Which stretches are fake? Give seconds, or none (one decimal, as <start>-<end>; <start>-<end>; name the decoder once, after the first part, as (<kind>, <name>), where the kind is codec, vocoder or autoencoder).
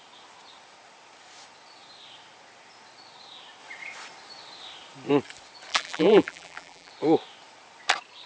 5.7-6.9 (vocoder, BigVGAN v2)